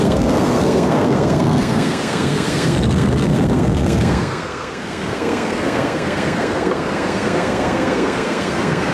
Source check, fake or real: fake